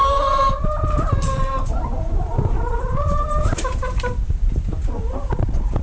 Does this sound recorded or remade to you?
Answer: remade